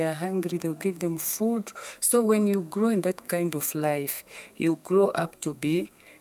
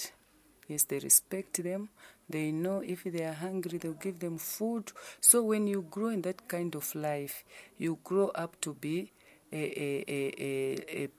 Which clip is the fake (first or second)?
first